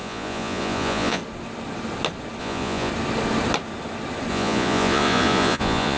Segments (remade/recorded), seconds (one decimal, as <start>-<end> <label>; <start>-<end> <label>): 0.0-1.2 remade; 1.2-2.4 recorded; 2.4-2.9 remade; 2.9-4.3 recorded; 4.3-6.0 remade